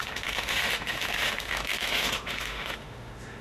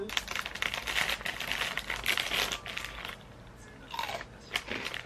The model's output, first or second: first